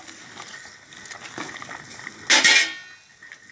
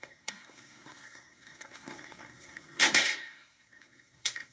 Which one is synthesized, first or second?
second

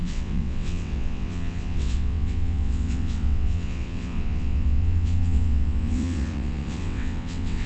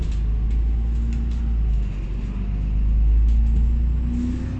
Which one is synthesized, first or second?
first